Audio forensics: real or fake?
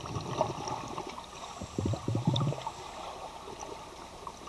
real